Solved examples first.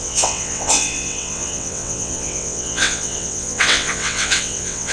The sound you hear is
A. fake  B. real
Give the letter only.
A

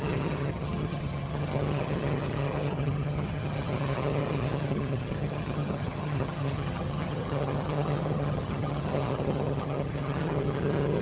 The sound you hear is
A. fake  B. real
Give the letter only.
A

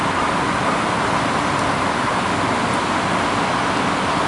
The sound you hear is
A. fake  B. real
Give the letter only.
B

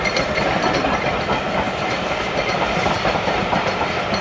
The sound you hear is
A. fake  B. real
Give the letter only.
A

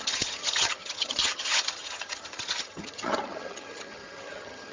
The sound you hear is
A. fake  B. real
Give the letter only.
A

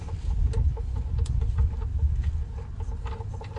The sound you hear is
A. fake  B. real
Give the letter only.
B